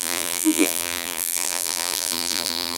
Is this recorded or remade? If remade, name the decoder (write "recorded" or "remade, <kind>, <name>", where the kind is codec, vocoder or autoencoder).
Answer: remade, vocoder, BigVGAN v2